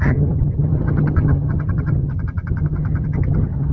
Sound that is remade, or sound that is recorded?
remade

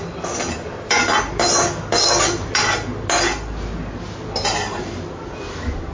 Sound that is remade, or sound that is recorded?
recorded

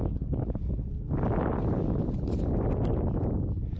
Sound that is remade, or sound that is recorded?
recorded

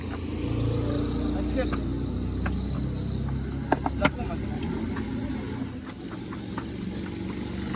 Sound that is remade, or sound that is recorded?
recorded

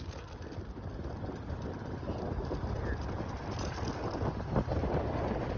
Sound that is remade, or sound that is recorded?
recorded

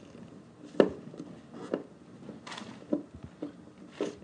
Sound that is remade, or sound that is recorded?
recorded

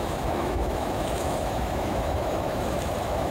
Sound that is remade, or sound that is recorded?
remade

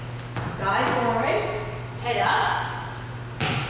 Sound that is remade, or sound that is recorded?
recorded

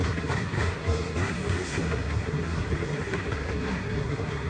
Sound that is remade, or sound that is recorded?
remade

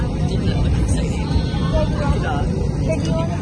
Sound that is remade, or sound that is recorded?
recorded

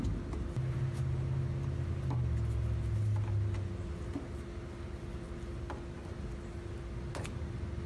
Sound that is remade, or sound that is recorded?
recorded